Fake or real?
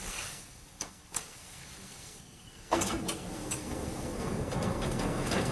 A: fake